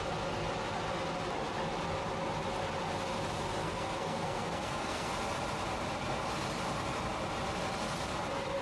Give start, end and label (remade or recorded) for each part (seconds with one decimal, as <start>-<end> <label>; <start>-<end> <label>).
0.0-3.6 recorded; 3.6-5.1 remade; 5.1-8.6 recorded